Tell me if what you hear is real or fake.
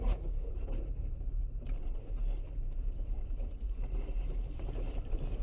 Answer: fake